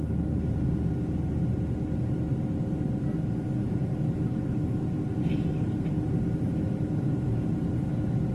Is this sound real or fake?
real